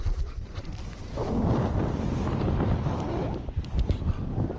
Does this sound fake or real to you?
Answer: fake